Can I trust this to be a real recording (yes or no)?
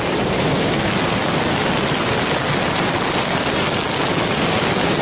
yes